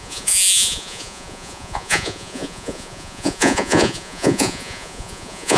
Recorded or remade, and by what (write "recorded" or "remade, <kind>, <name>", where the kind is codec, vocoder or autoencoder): remade, vocoder, Vocos